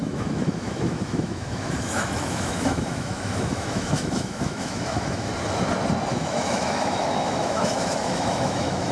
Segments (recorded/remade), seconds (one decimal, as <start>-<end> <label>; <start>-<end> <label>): 0.0-5.3 remade; 5.3-6.1 recorded; 6.1-8.9 remade